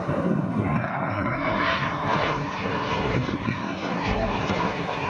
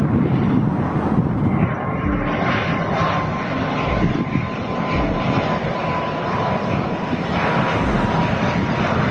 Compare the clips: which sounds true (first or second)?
second